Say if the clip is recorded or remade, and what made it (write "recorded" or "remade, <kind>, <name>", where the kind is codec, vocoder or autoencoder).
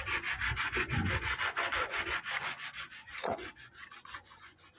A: remade, vocoder, Vocos